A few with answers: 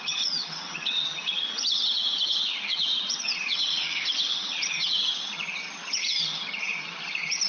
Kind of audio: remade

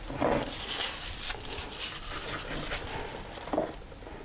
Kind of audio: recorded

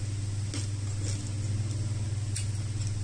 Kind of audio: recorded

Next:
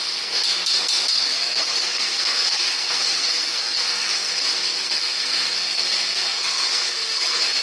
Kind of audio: remade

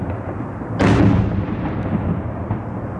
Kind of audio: recorded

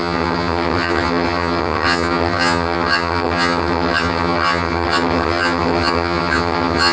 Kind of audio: remade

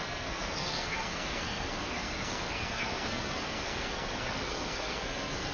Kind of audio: remade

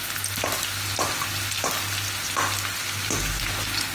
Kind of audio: recorded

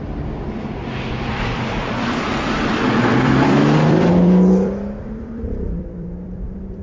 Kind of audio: remade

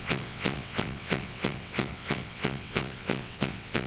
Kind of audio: remade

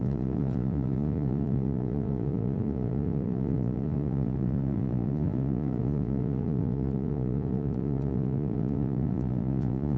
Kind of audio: remade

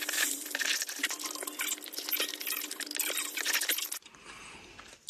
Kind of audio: recorded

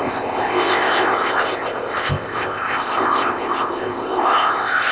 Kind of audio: remade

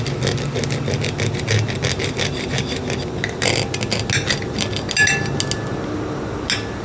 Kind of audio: recorded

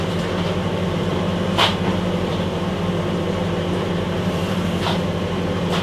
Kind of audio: remade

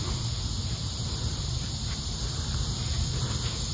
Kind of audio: remade